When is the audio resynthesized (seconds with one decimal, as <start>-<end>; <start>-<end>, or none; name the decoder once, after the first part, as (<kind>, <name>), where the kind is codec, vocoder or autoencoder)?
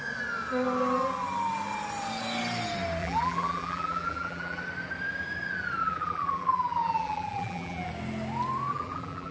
3.0-4.6 (vocoder, BigVGAN v2); 5.8-7.9; 8.7-9.3